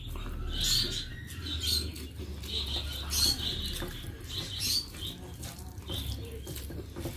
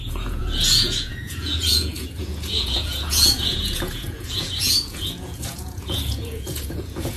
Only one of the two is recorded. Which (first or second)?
first